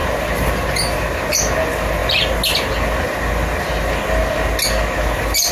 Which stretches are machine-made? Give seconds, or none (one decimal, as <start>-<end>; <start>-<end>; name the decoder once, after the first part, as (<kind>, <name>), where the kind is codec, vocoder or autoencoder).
none